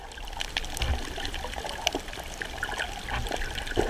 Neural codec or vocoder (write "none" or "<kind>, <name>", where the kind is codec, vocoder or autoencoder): vocoder, BigVGAN v2